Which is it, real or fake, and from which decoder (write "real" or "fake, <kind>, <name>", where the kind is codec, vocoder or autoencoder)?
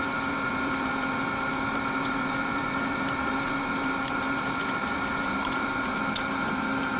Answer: fake, vocoder, BigVGAN v2